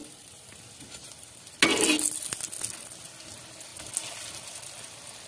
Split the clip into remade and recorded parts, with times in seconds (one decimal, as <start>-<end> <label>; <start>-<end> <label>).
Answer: 0.0-5.3 recorded